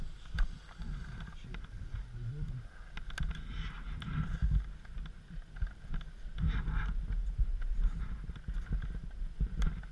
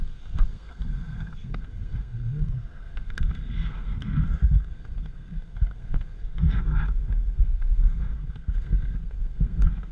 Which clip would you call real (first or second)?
first